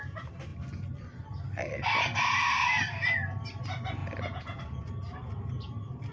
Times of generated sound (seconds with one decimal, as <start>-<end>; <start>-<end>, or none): 4.0-4.6